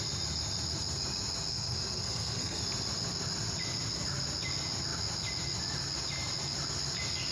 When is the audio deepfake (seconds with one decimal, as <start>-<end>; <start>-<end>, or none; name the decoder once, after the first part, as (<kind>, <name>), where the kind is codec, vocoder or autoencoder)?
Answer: 1.5-2.6 (codec, SNAC)

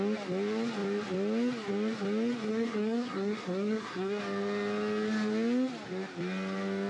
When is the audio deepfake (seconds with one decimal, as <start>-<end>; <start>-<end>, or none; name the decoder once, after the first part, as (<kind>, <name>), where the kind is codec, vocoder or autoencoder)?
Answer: 2.5-4.2 (codec, SNAC)

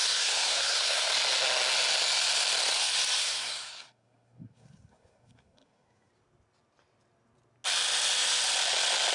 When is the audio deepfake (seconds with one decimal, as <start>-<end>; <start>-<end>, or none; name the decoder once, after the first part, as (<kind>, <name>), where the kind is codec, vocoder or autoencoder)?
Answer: 0.0-1.1 (codec, SNAC); 3.2-6.1

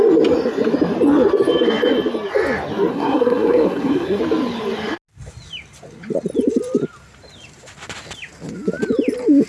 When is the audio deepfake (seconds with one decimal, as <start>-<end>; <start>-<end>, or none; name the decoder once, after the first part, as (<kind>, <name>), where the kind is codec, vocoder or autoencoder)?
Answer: 2.9-4.2 (codec, SNAC)

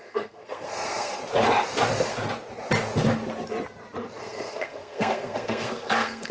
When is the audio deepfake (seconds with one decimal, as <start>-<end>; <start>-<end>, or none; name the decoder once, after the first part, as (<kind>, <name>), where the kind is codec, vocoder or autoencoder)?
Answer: 0.0-1.2 (codec, SNAC); 4.2-6.3

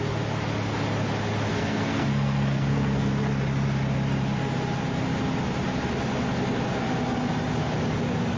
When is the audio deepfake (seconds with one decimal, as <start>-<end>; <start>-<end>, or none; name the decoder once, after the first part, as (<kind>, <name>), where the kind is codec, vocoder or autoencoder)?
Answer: 1.5-3.1 (codec, SNAC)

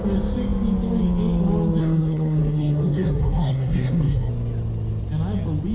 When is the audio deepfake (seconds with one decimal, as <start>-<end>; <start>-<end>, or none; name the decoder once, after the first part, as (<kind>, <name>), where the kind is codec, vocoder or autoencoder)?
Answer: 1.8-4.3 (codec, SNAC)

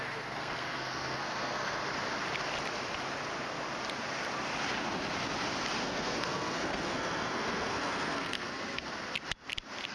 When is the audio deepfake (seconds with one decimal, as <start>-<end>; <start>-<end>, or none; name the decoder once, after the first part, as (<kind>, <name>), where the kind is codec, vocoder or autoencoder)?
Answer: 0.0-1.8 (codec, SNAC); 5.8-8.9